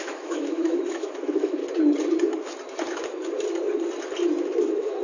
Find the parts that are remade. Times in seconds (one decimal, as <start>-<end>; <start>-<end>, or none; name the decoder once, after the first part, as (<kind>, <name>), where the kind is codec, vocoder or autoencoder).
0.0-1.6 (autoencoder, DAC-VAE); 4.6-5.0